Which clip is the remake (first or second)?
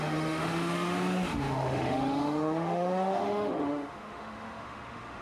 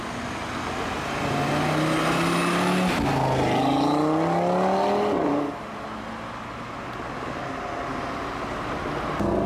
first